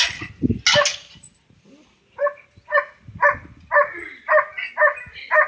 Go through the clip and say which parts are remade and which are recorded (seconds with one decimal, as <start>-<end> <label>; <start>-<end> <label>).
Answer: 0.0-0.9 recorded; 0.9-4.2 remade; 4.2-5.5 recorded